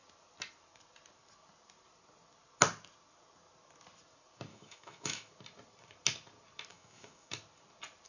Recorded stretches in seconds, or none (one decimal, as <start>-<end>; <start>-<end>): 0.0-4.5; 5.3-6.7; 7.3-8.1